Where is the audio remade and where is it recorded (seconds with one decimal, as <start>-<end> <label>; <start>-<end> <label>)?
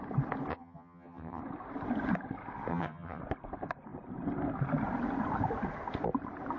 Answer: 0.0-0.5 recorded; 0.5-1.4 remade; 1.4-2.7 recorded; 2.7-3.2 remade; 3.2-6.6 recorded